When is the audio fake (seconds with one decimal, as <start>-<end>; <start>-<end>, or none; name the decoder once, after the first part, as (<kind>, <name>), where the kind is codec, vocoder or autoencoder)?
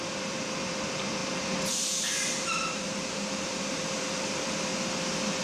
0.0-4.7 (vocoder, BigVGAN v2)